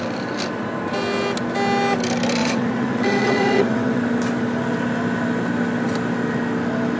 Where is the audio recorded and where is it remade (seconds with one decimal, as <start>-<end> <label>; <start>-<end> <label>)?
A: 0.0-2.4 recorded; 2.4-4.0 remade; 4.0-7.0 recorded